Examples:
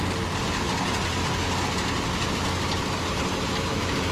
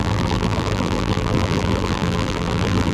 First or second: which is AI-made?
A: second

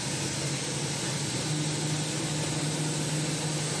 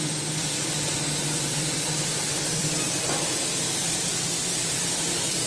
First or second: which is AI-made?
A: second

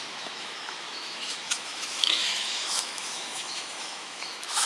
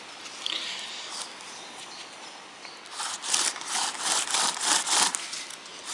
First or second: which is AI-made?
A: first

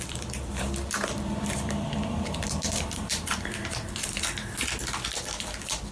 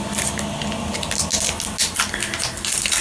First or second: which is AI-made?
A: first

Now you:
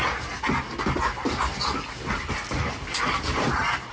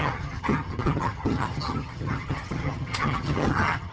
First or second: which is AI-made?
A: second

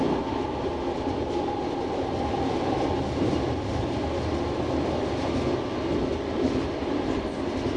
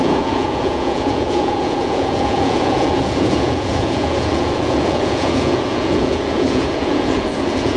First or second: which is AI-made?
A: second